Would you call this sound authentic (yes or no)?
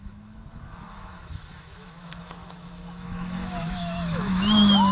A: no